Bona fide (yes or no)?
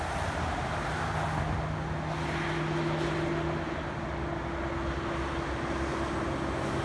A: yes